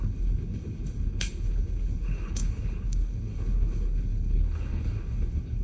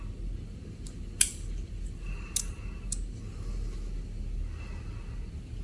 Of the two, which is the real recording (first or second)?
second